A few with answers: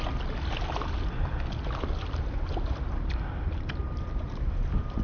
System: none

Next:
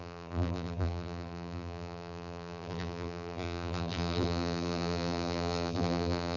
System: vocoder, BigVGAN v2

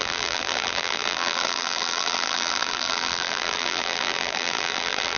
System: vocoder, BigVGAN v2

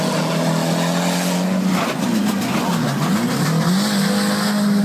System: none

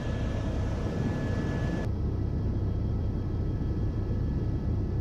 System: vocoder, BigVGAN v2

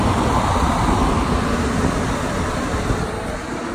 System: none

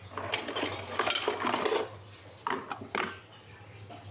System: none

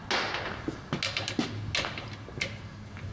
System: none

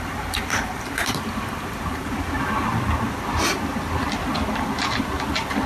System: vocoder, BigVGAN v2